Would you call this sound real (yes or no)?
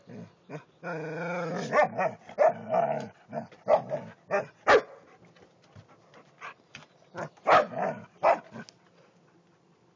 yes